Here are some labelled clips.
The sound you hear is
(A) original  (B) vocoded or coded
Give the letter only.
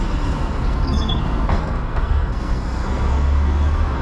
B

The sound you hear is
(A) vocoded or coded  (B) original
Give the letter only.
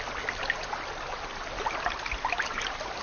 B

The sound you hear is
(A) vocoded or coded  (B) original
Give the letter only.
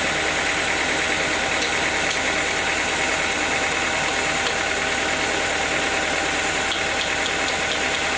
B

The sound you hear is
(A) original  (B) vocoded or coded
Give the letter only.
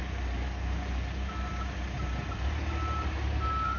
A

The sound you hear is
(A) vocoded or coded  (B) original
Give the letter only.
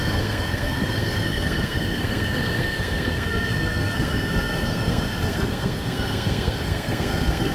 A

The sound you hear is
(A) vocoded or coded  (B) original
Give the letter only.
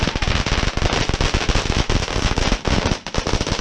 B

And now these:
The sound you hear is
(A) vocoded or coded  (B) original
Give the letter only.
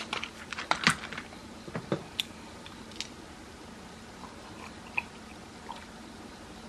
B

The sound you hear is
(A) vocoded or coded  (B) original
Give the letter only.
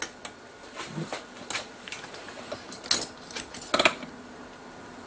B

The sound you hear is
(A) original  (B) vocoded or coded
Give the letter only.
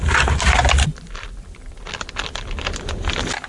A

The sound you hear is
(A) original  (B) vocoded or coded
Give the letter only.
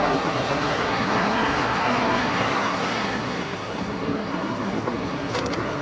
B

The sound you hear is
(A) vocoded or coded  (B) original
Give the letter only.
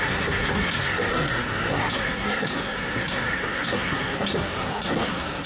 A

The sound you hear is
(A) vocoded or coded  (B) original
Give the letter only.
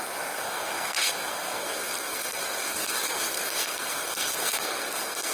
A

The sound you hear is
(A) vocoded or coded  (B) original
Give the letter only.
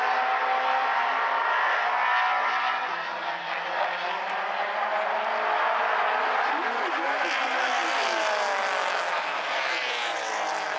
B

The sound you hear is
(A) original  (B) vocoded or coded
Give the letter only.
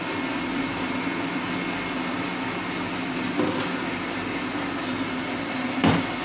A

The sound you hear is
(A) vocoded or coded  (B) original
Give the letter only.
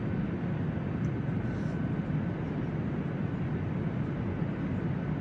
B